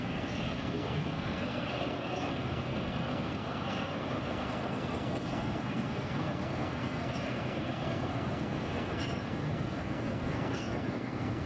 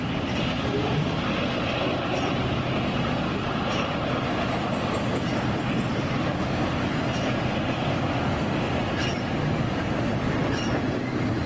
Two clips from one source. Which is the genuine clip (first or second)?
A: second